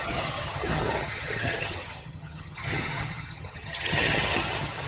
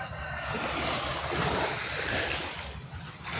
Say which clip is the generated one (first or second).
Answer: first